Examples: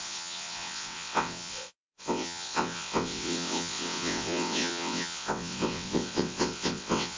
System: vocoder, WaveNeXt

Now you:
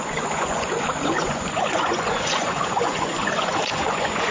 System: vocoder, Vocos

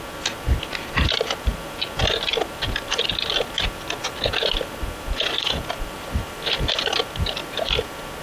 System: none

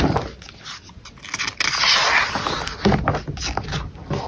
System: none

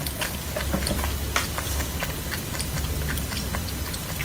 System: none